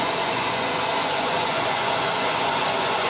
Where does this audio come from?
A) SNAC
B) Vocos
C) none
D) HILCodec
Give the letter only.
B